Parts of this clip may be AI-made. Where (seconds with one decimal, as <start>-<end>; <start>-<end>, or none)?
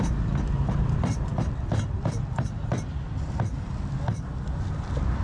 none